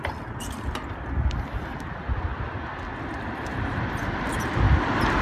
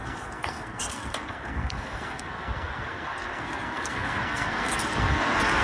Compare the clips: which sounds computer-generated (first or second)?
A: second